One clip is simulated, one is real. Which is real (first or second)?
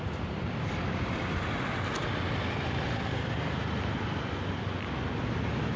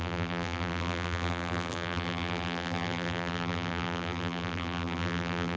first